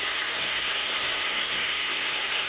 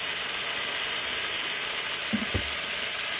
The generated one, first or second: first